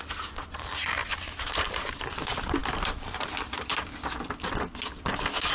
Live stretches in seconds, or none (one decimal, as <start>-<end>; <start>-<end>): 3.7-5.5